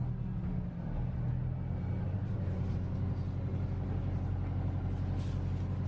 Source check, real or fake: real